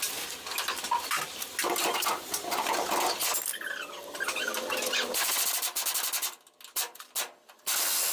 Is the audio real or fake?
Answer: real